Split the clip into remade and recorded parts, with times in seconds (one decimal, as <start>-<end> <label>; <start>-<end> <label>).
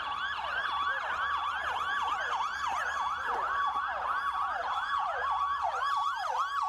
0.0-1.4 recorded; 1.4-2.0 remade; 2.0-4.6 recorded; 4.6-5.9 remade; 5.9-6.7 recorded